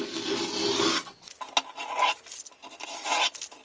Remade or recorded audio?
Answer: recorded